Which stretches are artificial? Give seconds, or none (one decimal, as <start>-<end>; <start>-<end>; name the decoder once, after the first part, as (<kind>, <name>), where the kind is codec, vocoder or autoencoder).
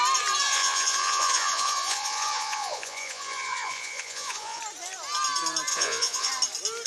0.5-4.6 (vocoder, Vocos); 5.7-6.3